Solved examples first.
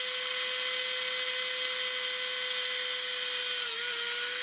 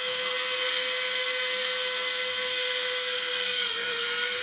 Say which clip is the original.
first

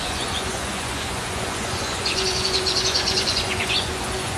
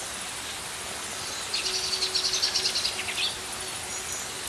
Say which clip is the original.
second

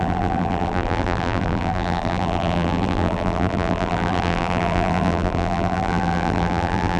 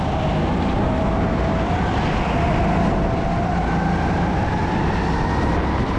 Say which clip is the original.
second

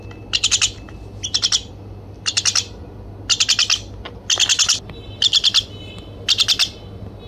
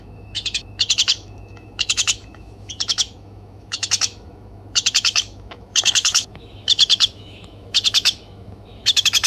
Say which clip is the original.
first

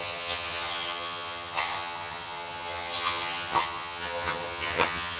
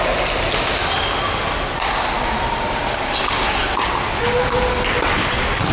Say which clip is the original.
second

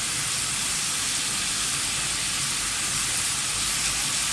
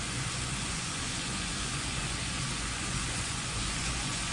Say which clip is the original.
first